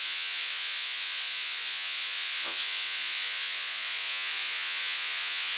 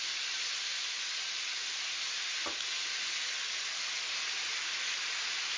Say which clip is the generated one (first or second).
first